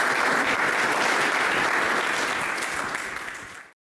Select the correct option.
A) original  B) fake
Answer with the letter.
A